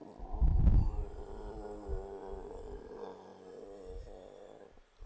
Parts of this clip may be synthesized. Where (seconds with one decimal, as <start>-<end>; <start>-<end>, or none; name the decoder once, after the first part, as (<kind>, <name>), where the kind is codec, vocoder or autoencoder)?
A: 0.0-0.9 (vocoder, BigVGAN v2)